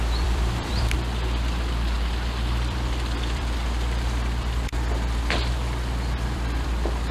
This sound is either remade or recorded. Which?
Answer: remade